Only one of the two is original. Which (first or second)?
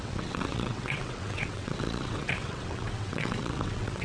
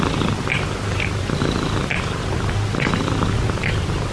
second